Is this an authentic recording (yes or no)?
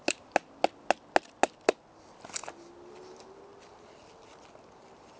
yes